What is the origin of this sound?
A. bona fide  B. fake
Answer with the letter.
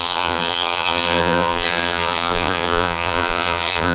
B